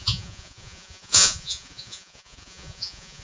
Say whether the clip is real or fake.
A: fake